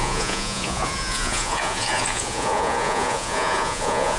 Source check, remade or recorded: remade